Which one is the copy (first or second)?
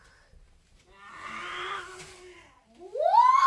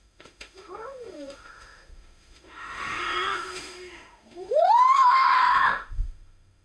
second